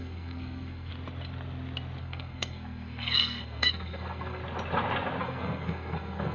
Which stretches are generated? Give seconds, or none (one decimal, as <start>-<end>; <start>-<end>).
0.0-0.9; 2.0-4.4; 5.2-6.3